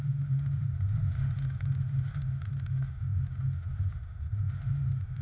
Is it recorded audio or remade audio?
remade